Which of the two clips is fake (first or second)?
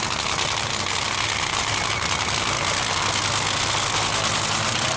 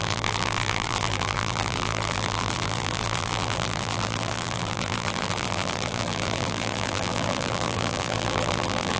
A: second